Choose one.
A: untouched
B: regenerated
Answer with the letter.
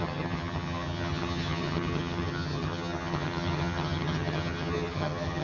B